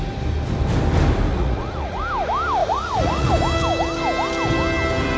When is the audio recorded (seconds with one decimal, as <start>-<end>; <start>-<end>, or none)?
0.0-1.3; 2.0-2.6; 3.3-5.2